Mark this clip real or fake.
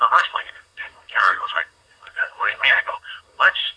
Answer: fake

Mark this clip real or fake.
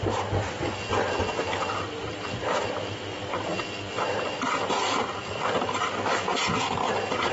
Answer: real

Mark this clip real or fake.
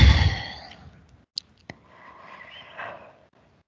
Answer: real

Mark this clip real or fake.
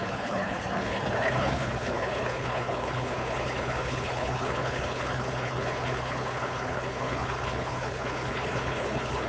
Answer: fake